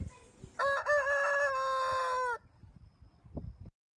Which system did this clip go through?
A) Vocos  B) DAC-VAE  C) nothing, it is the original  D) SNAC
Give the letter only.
C